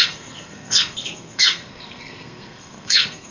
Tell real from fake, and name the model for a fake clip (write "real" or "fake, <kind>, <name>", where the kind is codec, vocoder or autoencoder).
fake, codec, SNAC